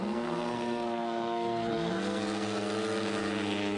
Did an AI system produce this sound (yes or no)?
yes